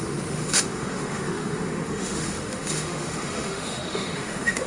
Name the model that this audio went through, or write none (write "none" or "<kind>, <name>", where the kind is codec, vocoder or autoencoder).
autoencoder, DAC-VAE